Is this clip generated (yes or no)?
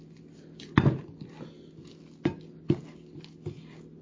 no